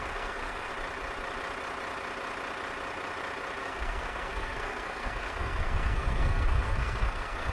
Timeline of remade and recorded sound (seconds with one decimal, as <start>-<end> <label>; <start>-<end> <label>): 0.0-0.7 remade; 0.7-3.6 recorded; 3.6-7.5 remade